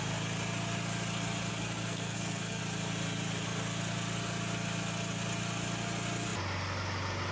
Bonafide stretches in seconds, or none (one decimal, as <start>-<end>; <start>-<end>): 0.0-1.5; 2.6-7.3